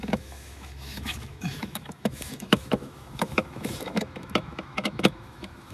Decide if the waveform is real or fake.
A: fake